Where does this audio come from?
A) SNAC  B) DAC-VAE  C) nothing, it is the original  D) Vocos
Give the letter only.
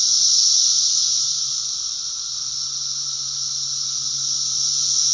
C